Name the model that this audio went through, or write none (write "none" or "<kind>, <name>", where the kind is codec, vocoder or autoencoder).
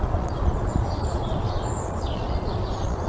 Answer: vocoder, Vocos